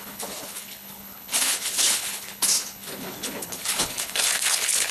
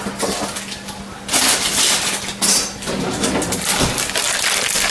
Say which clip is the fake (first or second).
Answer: first